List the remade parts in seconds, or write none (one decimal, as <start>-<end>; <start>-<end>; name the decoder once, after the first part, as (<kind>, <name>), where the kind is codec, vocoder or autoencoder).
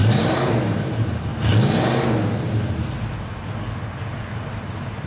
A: 0.0-1.3 (vocoder, BigVGAN v2); 4.4-5.1